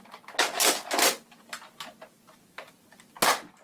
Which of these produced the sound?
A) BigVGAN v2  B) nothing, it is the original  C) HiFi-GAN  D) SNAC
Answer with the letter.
B